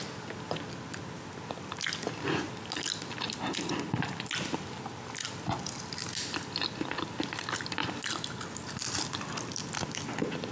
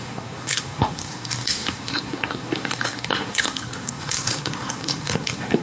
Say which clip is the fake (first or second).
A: second